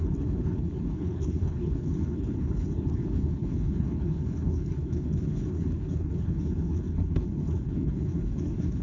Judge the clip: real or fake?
fake